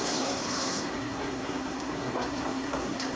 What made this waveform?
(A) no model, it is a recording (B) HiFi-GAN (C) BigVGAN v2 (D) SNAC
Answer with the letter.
D